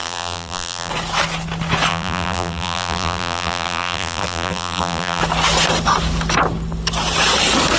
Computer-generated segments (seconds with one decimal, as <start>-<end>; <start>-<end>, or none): 0.0-0.9; 1.9-5.2